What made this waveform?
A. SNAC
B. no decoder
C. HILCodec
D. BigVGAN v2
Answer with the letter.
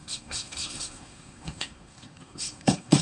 A